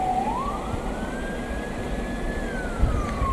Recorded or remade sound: recorded